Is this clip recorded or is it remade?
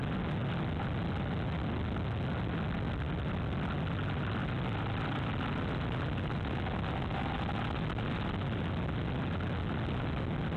recorded